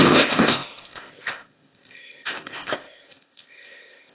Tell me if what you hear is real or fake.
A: fake